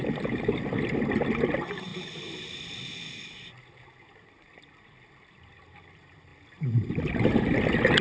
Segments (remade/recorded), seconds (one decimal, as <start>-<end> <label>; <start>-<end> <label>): 0.0-8.0 recorded

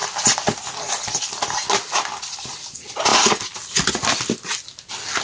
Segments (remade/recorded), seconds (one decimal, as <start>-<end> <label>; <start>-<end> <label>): 0.0-5.2 recorded

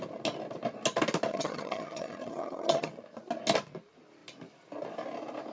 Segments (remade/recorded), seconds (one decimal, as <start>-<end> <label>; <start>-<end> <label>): 0.0-1.3 recorded; 1.3-2.9 remade; 2.9-5.5 recorded

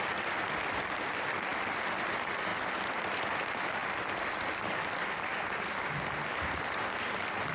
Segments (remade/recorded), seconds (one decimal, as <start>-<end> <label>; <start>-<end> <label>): 0.0-7.5 recorded

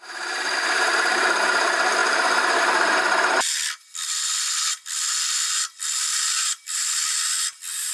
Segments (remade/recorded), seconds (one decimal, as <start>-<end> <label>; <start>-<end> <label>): 0.0-7.9 recorded